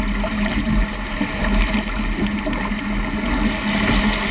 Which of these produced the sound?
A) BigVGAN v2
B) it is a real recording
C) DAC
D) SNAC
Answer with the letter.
B